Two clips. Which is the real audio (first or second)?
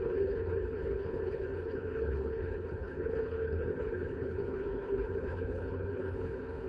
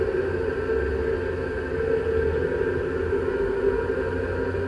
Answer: second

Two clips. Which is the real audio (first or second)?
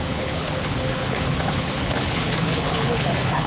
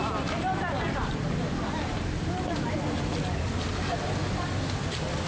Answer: second